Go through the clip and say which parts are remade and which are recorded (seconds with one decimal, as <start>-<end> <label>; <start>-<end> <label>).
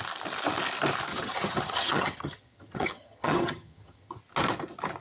0.0-1.1 recorded; 1.1-4.1 remade; 4.1-5.0 recorded